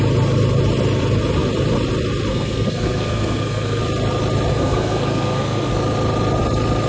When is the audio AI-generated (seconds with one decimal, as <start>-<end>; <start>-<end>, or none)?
2.3-3.8; 4.5-5.7